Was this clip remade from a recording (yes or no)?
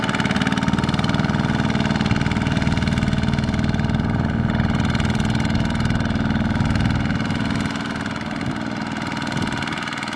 no